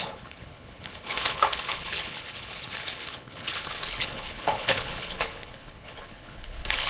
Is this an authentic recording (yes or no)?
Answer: no